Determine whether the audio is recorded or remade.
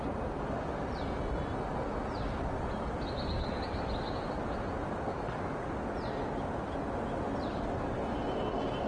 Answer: recorded